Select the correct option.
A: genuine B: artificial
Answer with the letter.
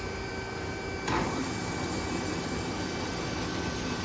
A